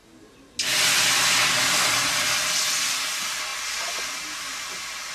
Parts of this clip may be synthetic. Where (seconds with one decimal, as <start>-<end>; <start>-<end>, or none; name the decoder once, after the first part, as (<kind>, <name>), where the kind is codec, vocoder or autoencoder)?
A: none